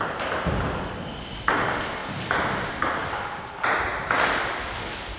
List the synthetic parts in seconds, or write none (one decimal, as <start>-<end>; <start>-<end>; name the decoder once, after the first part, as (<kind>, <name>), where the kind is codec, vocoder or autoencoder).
none